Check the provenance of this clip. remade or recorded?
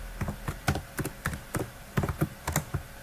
recorded